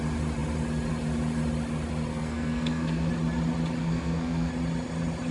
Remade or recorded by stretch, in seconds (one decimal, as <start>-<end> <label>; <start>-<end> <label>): 0.0-2.1 recorded; 2.1-3.1 remade; 3.1-3.8 recorded; 3.8-4.5 remade; 4.5-5.3 recorded